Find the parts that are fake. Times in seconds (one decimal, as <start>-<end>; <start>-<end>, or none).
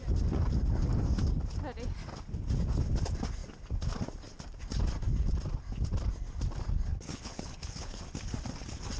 6.9-8.0